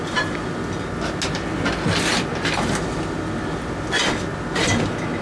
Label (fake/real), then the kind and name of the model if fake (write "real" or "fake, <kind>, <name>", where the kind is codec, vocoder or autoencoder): real